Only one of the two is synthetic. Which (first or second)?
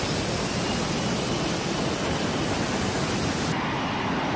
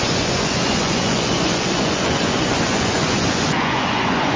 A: second